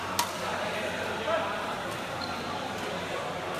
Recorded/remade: recorded